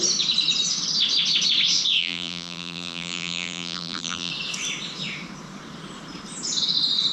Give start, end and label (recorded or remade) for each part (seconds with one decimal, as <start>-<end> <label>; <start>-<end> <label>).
0.0-2.0 recorded; 2.0-4.3 remade; 4.3-7.1 recorded